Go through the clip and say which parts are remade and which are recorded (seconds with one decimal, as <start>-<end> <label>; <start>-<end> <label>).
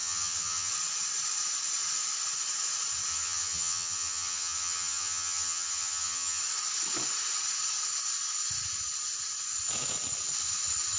0.0-0.7 remade; 0.7-3.1 recorded; 3.1-6.4 remade; 6.4-11.0 recorded